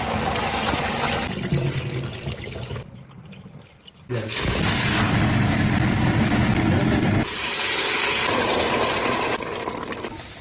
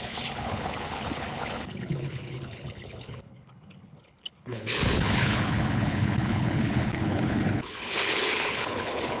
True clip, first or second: first